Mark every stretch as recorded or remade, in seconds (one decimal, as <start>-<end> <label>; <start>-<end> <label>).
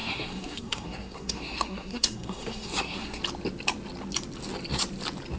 0.0-3.2 remade; 3.2-5.4 recorded